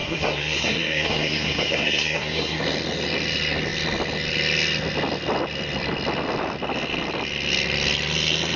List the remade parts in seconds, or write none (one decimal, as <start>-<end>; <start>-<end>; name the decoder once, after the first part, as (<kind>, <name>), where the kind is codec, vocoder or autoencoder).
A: 0.0-2.6 (codec, SNAC)